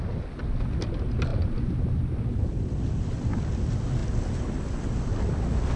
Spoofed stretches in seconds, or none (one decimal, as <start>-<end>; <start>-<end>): none